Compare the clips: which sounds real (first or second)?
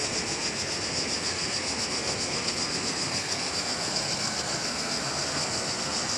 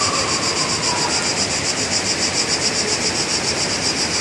second